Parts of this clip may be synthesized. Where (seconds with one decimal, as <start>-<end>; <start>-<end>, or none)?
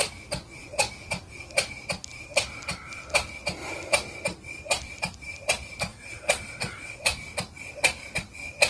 5.9-7.0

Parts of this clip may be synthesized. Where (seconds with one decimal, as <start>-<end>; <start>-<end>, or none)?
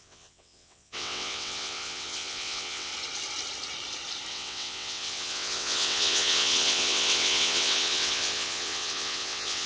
0.0-2.9; 4.3-9.7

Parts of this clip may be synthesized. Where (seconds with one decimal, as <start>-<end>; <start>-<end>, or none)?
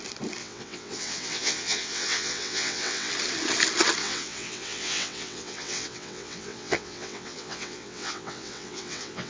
0.4-3.1; 4.0-9.3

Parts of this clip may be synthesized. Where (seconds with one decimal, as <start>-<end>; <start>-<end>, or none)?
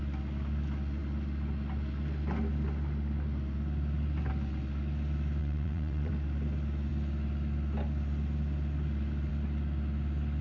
5.4-6.1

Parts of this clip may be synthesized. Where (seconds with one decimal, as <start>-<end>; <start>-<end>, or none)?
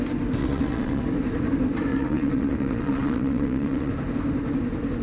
0.4-1.0; 1.9-3.9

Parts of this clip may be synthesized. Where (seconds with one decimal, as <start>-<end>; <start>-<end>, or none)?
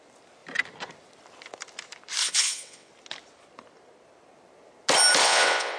2.2-2.9; 5.2-5.8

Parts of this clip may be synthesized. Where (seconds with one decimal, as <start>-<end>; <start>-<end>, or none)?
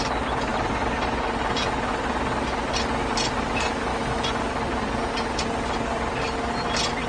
none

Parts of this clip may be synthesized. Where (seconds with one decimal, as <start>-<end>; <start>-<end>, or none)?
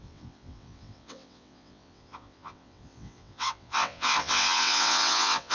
0.0-5.5